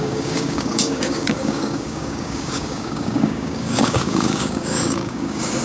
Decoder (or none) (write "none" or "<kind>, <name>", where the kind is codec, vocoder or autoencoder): codec, DAC